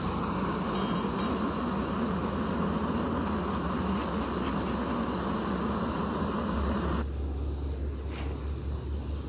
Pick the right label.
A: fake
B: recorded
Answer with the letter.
B